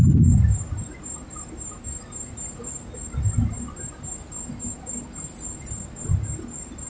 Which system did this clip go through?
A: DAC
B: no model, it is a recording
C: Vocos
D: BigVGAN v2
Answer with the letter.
B